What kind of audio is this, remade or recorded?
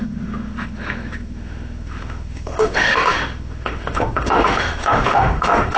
remade